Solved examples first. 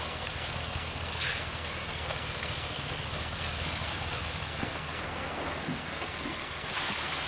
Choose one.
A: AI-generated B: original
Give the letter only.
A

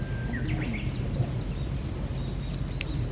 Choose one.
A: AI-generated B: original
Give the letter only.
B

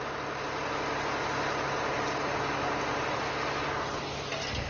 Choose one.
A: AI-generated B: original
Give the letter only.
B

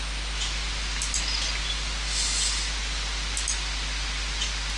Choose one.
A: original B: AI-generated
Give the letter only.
A